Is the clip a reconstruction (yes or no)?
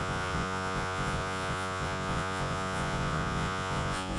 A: yes